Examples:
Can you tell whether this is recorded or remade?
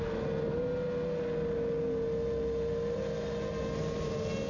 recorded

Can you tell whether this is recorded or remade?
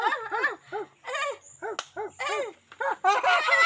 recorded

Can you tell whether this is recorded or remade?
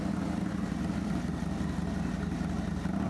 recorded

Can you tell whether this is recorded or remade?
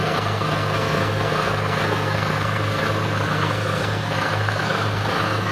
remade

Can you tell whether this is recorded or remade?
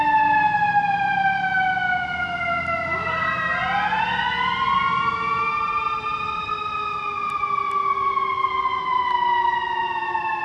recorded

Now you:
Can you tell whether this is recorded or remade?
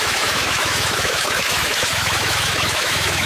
remade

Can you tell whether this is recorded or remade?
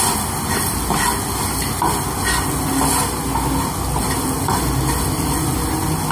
recorded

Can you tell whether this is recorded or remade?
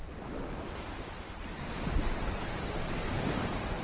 recorded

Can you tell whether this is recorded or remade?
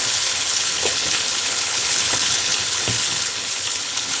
remade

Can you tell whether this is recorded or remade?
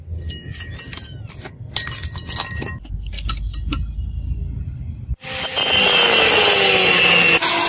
recorded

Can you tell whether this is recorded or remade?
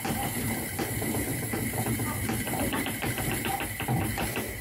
recorded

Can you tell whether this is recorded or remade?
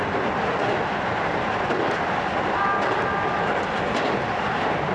recorded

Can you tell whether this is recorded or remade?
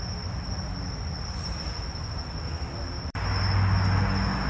recorded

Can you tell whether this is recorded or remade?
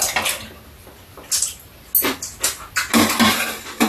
recorded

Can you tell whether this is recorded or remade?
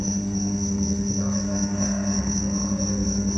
remade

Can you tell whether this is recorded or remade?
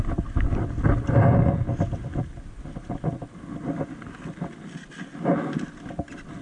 recorded